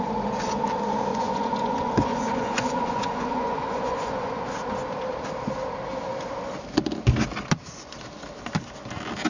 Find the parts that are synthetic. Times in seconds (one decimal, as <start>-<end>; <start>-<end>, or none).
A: 1.1-4.4